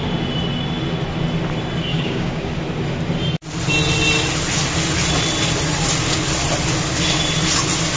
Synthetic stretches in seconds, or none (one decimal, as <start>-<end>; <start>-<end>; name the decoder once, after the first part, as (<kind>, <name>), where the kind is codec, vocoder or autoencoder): 1.9-2.5 (codec, DAC)